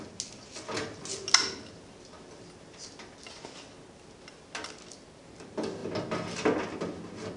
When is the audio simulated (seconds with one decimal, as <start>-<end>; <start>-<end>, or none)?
none